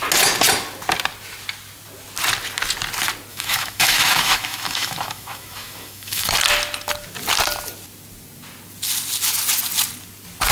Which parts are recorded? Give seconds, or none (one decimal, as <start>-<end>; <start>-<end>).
0.0-3.3; 6.3-10.5